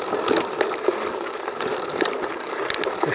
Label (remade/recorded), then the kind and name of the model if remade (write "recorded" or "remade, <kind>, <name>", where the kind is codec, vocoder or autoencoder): recorded